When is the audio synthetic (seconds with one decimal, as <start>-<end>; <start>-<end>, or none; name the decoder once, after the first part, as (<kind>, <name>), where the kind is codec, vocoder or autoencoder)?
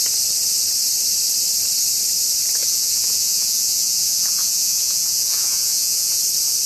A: 2.6-6.2 (vocoder, Vocos)